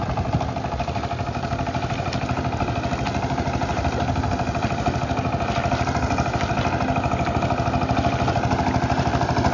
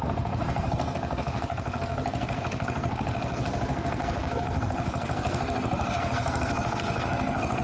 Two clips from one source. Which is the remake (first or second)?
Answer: second